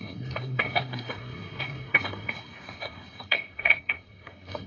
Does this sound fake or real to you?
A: fake